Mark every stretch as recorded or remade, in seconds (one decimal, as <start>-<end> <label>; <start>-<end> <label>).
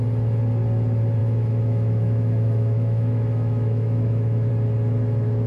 0.0-1.2 recorded; 1.2-4.5 remade; 4.5-5.5 recorded